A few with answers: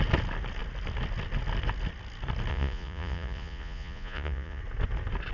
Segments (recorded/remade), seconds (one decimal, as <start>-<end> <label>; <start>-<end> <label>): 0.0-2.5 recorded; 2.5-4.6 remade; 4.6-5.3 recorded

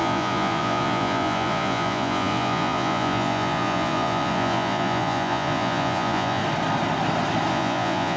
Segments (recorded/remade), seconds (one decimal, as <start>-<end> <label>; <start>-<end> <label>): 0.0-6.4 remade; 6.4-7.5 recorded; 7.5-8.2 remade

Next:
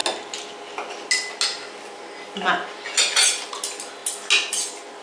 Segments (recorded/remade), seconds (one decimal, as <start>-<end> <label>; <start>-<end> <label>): 0.0-5.0 recorded

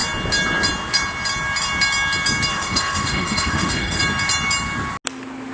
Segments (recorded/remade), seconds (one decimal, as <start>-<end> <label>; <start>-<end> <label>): 0.0-2.5 recorded; 2.5-4.0 remade; 4.0-5.5 recorded

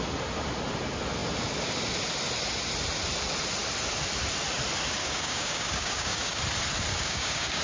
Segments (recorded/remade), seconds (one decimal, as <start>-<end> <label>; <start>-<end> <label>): 0.0-5.0 recorded; 5.0-6.4 remade; 6.4-6.9 recorded; 6.9-7.6 remade